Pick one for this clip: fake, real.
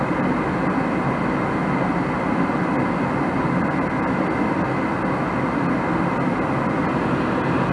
real